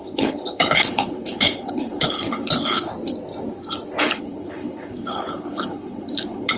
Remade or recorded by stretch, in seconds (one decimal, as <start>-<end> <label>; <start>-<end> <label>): 0.0-2.9 remade; 2.9-4.0 recorded; 4.0-6.6 remade